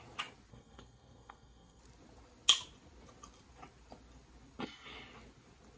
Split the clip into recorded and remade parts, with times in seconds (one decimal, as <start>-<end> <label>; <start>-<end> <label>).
0.0-0.5 recorded; 0.5-1.8 remade; 1.8-5.8 recorded